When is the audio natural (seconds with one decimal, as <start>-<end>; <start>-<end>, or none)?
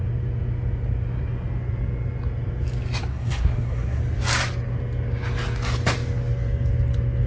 0.0-3.1; 4.0-7.3